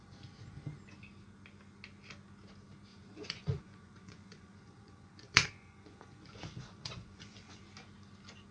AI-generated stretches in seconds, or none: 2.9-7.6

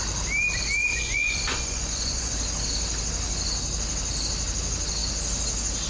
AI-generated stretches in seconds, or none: 0.9-2.3

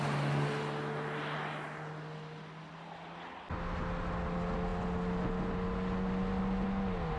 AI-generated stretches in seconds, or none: none

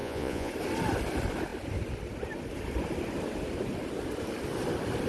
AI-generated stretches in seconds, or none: 0.0-0.5

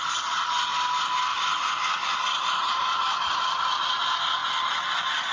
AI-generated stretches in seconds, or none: none

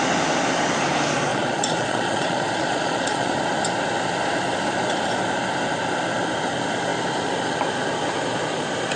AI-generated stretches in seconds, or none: 1.3-3.3

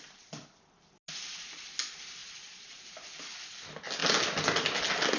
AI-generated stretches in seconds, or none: 2.2-2.8

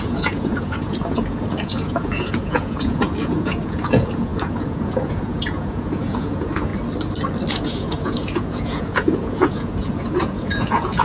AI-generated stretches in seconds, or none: 0.0-6.7; 7.5-11.0